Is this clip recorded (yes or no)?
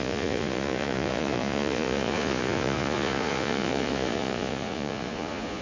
no